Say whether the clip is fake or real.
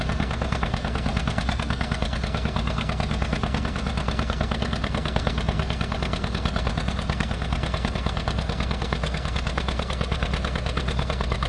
fake